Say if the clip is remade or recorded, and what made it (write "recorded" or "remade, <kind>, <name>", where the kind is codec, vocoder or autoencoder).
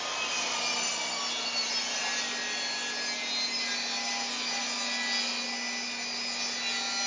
recorded